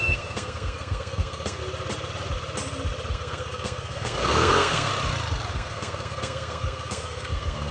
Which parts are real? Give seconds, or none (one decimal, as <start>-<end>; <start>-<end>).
1.6-3.1; 4.9-5.5